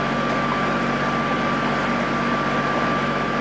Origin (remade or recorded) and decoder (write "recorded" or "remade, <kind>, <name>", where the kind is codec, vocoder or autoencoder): recorded